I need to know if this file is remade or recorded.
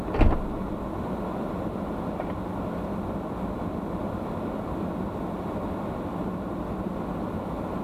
recorded